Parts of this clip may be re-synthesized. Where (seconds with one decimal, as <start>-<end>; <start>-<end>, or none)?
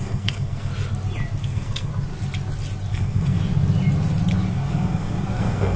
0.0-0.7; 1.4-1.9; 2.9-3.4; 4.5-5.8